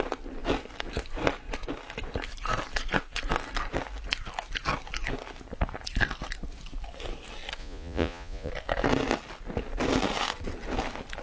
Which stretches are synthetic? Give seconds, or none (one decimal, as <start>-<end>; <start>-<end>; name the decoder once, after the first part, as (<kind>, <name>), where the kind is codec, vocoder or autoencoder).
7.6-8.5 (vocoder, Vocos)